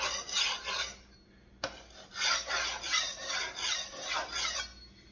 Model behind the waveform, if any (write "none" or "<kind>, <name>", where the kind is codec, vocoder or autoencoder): none